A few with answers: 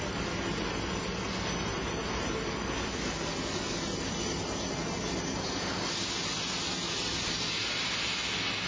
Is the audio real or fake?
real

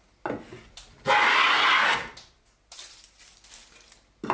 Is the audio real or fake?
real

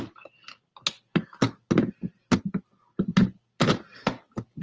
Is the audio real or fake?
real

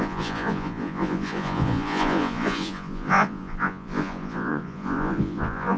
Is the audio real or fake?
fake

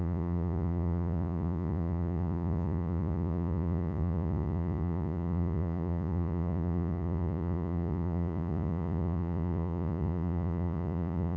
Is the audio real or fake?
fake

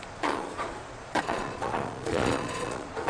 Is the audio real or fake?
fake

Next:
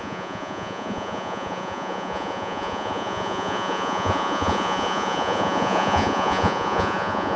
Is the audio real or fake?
fake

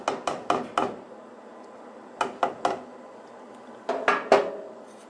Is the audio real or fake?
real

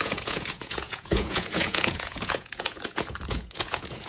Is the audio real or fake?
fake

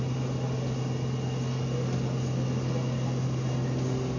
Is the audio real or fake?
real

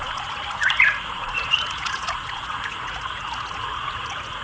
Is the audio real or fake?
fake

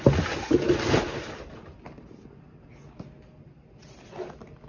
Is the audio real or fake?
real